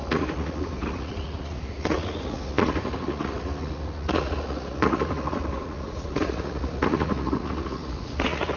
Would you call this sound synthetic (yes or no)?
yes